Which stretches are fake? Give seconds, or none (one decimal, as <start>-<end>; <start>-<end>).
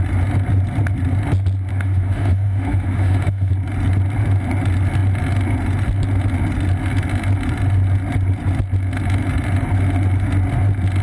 1.7-3.5